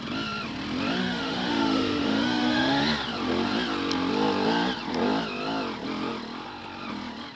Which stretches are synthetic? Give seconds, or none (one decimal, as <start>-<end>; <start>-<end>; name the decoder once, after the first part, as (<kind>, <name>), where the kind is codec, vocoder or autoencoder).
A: 1.0-2.8 (autoencoder, DAC-VAE)